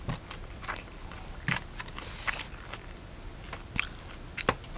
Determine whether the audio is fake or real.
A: real